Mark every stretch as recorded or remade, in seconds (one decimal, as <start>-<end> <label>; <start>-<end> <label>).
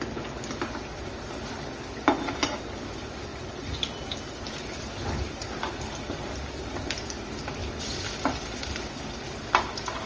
0.0-3.3 recorded; 3.3-6.5 remade; 6.5-7.6 recorded; 7.6-8.9 remade; 8.9-10.1 recorded